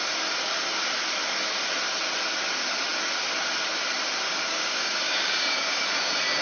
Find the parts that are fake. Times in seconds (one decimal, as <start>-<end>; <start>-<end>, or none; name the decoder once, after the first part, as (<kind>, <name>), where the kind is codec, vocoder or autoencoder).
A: 4.3-5.8 (codec, DAC)